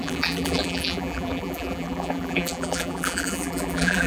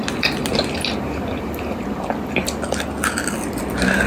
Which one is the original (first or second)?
second